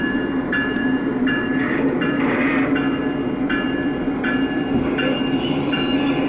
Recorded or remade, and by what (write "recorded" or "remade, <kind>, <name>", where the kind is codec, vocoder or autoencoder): remade, vocoder, BigVGAN v2